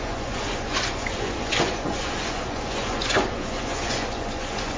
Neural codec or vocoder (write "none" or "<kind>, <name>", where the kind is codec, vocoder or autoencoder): vocoder, Vocos